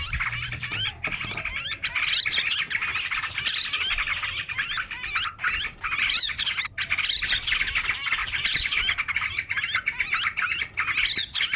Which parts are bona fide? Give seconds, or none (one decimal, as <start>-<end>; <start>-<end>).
0.0-2.9; 3.4-5.3; 6.5-8.2; 10.6-11.6